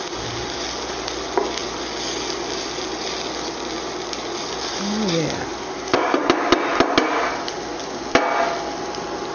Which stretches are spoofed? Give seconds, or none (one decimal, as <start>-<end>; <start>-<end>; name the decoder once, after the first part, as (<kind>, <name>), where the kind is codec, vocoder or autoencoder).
5.5-6.2 (codec, DAC)